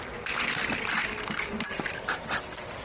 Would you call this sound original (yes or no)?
yes